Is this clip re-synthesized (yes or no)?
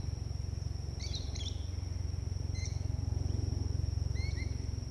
no